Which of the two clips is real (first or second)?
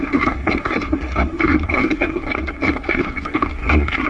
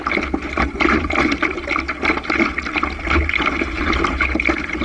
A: second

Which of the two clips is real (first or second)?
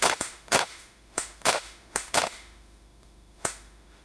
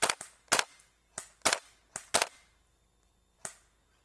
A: second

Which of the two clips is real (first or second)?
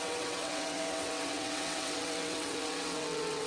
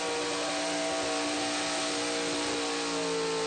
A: second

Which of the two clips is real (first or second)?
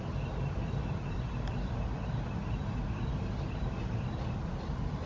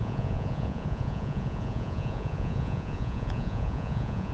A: first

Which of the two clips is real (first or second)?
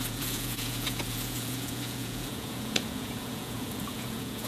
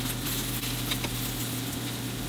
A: second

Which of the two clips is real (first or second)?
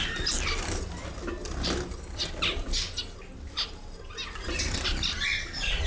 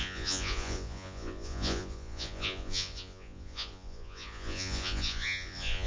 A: first